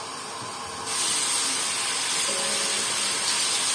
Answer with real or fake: real